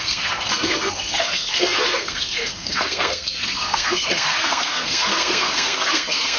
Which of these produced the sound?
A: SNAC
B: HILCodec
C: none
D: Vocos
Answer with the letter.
A